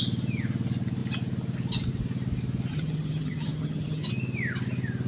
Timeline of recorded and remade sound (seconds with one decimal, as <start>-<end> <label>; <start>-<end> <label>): 0.0-2.7 recorded; 2.7-4.1 remade; 4.1-5.1 recorded